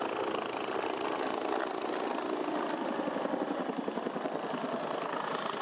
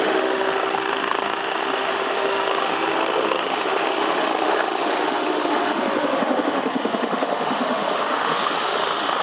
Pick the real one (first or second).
first